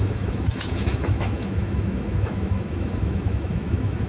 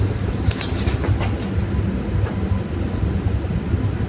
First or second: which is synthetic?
first